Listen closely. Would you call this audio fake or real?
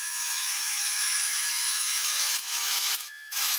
fake